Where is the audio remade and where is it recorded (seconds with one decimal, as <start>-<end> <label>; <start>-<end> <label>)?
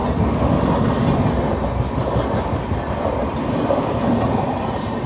0.0-3.0 recorded; 3.0-5.1 remade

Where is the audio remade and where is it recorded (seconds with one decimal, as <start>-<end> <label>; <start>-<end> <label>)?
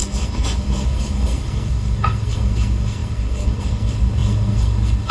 0.0-5.1 remade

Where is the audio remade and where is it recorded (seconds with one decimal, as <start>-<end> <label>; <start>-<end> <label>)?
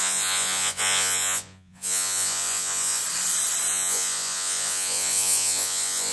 0.0-3.0 remade; 3.0-3.7 recorded; 3.7-6.1 remade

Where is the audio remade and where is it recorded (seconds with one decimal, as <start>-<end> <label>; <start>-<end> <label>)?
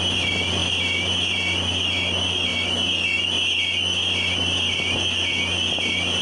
0.0-6.2 recorded